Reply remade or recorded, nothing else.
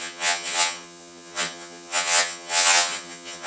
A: remade